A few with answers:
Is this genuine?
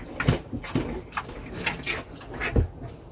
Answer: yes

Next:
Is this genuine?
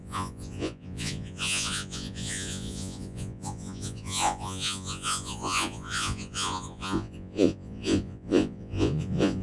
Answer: no